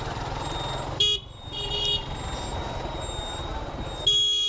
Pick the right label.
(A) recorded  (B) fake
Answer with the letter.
A